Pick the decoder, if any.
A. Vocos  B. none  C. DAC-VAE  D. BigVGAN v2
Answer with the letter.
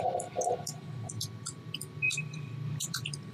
D